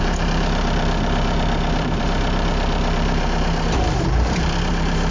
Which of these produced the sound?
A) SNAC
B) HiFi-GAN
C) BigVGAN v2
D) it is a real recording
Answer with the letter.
C